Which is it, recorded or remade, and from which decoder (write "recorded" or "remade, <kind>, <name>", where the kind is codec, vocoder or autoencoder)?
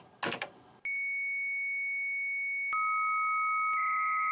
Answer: recorded